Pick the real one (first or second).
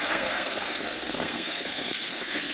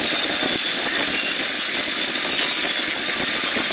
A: second